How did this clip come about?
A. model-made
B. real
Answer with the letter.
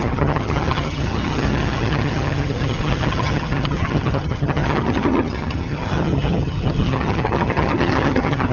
A